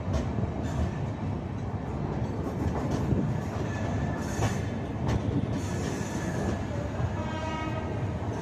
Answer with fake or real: real